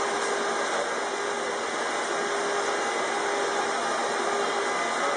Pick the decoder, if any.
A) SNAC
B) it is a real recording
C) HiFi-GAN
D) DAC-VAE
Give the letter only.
B